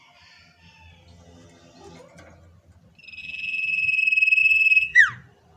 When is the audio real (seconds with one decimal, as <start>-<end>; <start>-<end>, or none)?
0.0-3.2; 4.0-4.4; 5.0-5.6